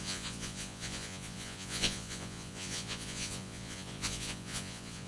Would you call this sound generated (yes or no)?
yes